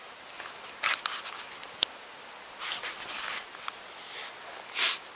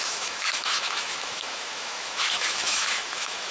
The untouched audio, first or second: first